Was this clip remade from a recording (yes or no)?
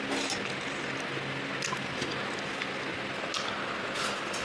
no